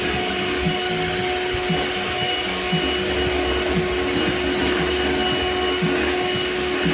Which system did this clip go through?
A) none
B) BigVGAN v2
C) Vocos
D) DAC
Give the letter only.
A